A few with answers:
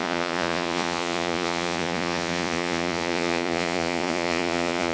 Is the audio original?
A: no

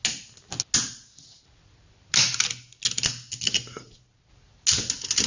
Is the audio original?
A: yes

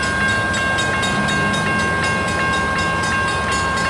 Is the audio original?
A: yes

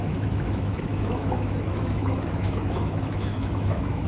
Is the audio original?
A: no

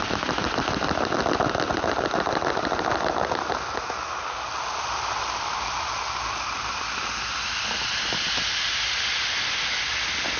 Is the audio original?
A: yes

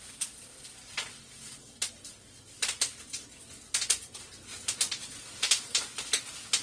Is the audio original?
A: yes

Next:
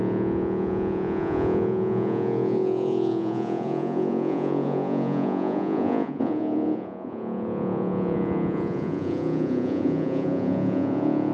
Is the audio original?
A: no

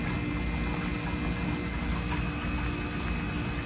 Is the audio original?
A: yes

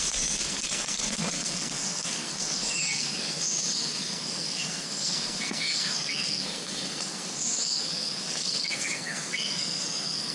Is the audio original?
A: no